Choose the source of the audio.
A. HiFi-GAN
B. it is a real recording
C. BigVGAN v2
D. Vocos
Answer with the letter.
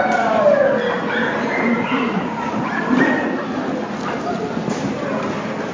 B